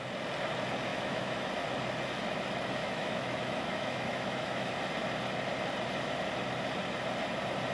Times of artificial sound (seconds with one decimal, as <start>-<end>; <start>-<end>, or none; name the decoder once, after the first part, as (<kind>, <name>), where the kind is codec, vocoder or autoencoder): 0.9-1.5 (autoencoder, DAC-VAE); 2.8-4.7